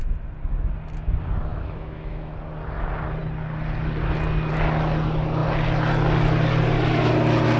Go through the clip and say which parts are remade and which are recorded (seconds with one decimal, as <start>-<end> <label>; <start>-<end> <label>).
0.0-1.5 recorded; 1.5-2.3 remade; 2.3-7.6 recorded